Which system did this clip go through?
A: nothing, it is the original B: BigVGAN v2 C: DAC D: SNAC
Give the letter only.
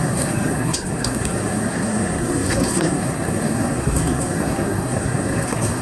D